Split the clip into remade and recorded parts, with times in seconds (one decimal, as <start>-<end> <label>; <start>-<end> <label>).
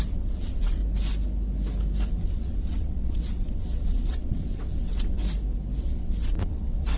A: 0.0-0.8 remade; 0.8-2.1 recorded; 2.1-5.2 remade; 5.2-5.8 recorded; 5.8-7.0 remade